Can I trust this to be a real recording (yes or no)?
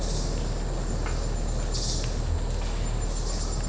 yes